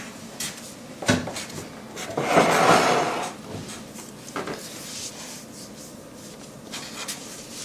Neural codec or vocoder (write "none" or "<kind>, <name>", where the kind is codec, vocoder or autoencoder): none